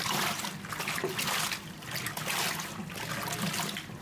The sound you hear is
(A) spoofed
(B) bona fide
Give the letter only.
B